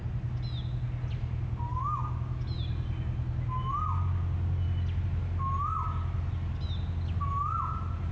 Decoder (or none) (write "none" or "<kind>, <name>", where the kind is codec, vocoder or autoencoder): none